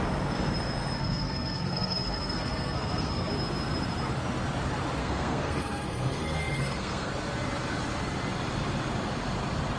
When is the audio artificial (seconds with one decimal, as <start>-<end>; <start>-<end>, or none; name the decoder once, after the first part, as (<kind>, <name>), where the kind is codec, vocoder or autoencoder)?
1.0-3.3 (codec, SNAC); 5.0-7.1